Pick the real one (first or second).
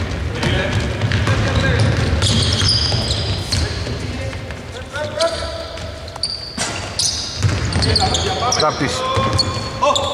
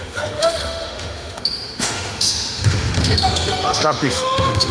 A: first